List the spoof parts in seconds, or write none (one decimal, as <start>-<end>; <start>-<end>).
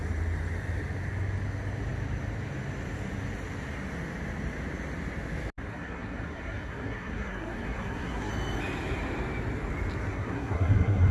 5.7-8.3; 10.1-11.1